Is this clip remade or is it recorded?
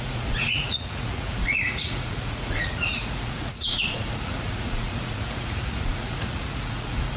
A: remade